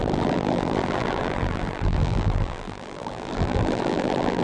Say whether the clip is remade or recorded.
remade